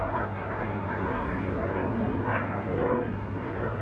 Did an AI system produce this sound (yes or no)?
yes